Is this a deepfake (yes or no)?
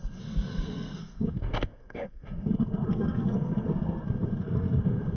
yes